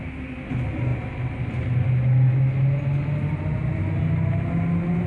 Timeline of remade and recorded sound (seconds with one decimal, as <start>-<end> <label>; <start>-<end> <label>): 0.0-5.1 recorded